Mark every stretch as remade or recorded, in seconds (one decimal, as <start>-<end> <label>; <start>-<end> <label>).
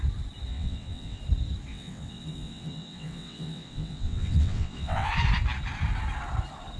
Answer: 0.0-0.5 recorded; 0.5-1.2 remade; 1.2-1.7 recorded; 1.7-5.1 remade; 5.1-6.8 recorded